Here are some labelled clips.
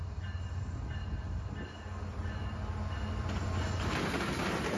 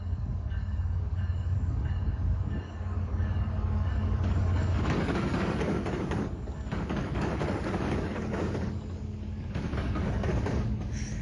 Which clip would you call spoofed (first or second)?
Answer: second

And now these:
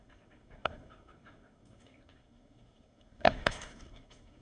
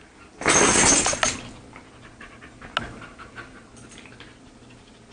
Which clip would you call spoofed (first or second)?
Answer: first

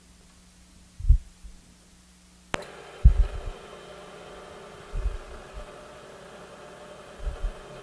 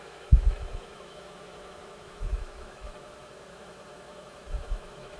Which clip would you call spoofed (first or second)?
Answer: second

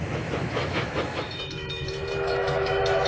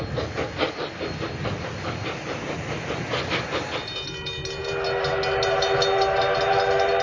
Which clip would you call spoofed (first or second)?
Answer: first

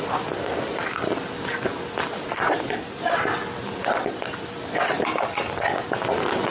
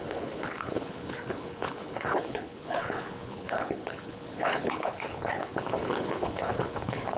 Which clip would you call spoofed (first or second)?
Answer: second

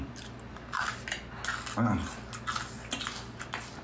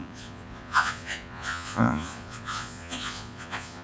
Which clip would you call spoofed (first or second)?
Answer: second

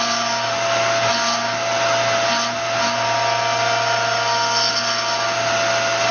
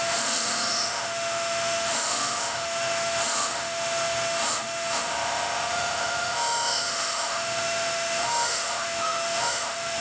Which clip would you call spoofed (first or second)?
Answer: second